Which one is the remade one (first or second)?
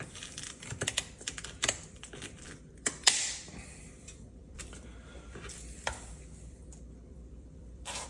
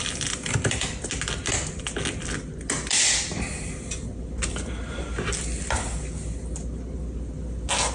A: first